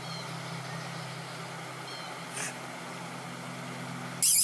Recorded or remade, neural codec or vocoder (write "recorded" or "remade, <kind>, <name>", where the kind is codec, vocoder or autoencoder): recorded